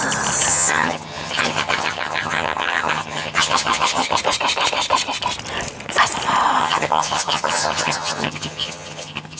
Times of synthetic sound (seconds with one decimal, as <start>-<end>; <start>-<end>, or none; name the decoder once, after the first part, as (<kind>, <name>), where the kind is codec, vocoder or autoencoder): 0.5-4.2 (vocoder, HiFi-GAN); 6.6-9.4